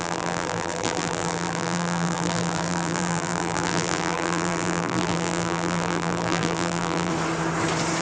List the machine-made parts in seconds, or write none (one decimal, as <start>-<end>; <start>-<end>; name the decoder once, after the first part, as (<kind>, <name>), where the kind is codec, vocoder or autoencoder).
0.0-7.1 (vocoder, BigVGAN v2)